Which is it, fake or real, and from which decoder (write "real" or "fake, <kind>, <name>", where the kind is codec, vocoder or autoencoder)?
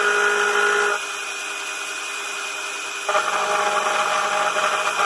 real